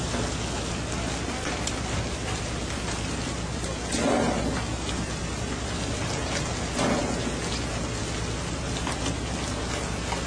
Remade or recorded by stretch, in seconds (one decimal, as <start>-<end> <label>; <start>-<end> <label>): 0.0-10.3 recorded